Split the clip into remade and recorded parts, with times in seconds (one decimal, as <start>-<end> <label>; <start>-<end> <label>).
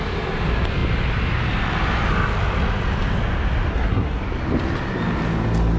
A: 0.0-3.7 recorded; 3.7-4.2 remade; 4.2-5.8 recorded